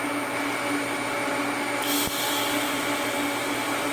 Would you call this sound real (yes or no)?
yes